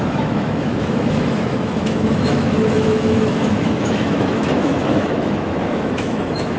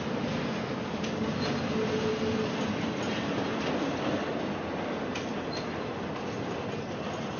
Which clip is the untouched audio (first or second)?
second